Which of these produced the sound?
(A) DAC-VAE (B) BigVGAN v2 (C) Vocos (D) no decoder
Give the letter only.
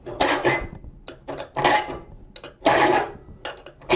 D